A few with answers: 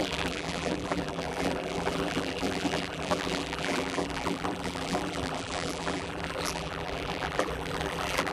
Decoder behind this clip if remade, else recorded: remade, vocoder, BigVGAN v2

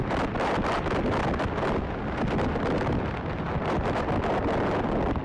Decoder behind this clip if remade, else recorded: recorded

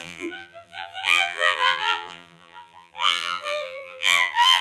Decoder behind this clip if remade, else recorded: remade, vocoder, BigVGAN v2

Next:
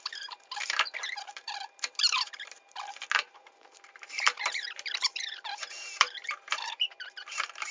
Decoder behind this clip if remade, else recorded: remade, vocoder, BigVGAN v2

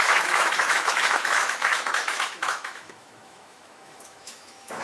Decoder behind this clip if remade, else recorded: remade, autoencoder, DAC-VAE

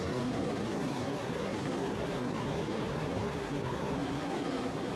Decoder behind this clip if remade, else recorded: remade, codec, SNAC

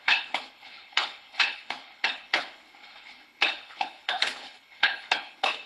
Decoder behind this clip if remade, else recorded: remade, codec, HILCodec